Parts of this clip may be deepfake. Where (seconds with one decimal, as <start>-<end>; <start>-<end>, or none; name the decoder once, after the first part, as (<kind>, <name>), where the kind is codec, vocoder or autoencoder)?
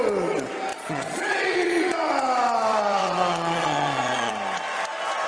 0.7-2.1 (vocoder, Vocos); 2.7-4.3